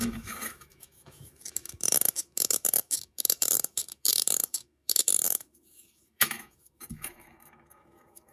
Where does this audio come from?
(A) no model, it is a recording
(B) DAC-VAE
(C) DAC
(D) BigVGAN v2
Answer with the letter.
B